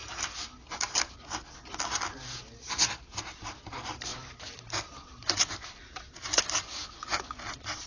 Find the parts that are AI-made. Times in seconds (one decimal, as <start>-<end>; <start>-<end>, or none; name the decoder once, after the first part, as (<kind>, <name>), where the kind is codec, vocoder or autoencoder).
2.7-6.8 (vocoder, BigVGAN v2)